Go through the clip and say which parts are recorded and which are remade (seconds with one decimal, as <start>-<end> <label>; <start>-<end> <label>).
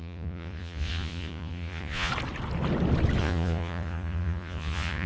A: 0.0-2.1 remade; 2.1-3.2 recorded; 3.2-5.1 remade